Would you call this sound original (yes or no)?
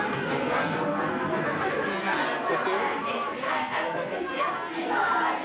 no